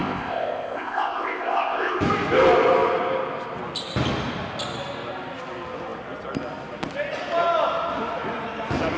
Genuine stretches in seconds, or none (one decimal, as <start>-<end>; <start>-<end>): 2.0-9.0